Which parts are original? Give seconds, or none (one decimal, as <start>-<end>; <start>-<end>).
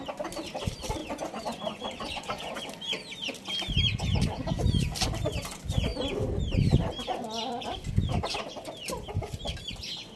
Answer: 0.0-1.0; 2.6-10.2